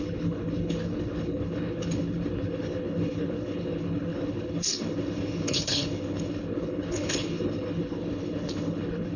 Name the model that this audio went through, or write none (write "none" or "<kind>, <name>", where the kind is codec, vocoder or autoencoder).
codec, HILCodec